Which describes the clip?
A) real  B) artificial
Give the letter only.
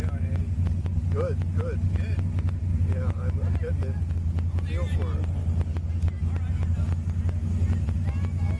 A